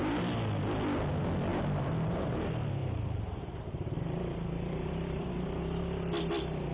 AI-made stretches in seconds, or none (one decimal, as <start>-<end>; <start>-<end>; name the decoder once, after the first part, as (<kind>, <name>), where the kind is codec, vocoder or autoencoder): 1.5-2.3 (vocoder, BigVGAN v2); 2.8-5.8